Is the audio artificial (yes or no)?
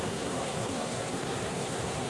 yes